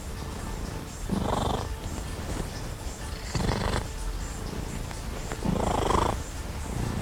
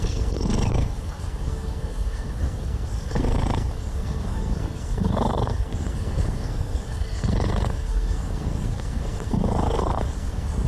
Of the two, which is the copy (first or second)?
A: second